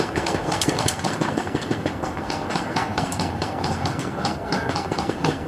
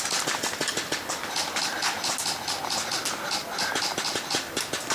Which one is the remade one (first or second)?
first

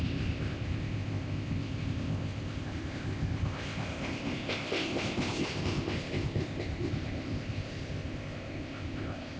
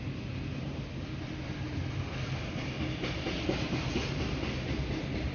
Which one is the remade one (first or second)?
first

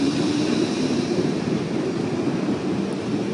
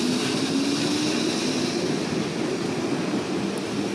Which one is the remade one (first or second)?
first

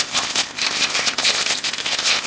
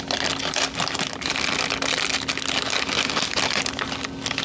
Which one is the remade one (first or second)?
first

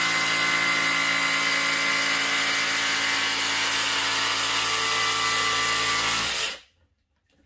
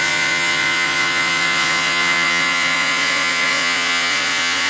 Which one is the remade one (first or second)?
second